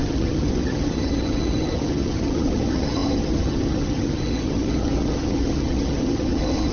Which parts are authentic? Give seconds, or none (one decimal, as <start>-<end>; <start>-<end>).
none